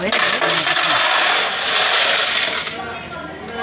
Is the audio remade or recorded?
recorded